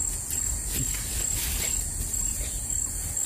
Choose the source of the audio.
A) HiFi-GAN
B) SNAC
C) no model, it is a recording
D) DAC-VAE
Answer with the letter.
C